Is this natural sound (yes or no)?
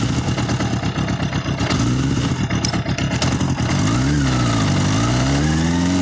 yes